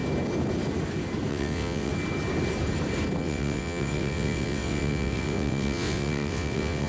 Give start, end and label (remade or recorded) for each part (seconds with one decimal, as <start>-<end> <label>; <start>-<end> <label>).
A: 0.0-1.3 recorded; 1.3-1.9 remade; 1.9-3.2 recorded; 3.2-6.9 remade